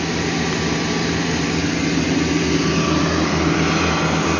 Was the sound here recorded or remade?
recorded